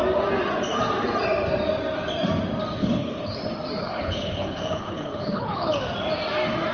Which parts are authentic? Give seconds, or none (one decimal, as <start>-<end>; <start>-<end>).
0.0-2.8; 3.4-3.8; 5.8-6.7